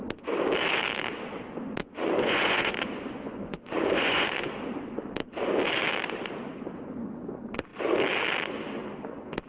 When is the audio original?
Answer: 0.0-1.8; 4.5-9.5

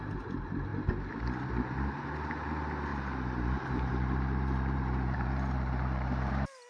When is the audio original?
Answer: 0.0-2.9; 6.3-6.7

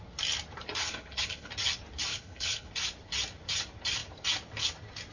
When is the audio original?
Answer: 0.0-0.8; 1.5-2.1; 2.7-5.1

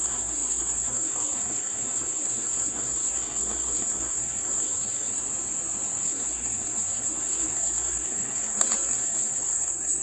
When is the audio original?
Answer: 5.2-6.0

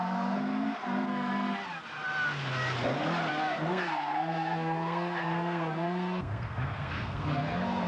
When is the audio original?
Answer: 1.6-3.3

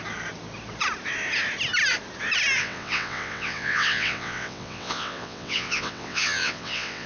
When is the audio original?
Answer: 0.0-2.6

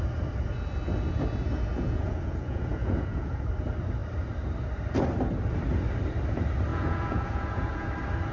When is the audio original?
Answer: 0.0-1.7; 3.5-6.7; 7.9-8.3